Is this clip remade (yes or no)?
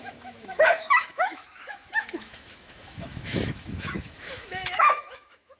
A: yes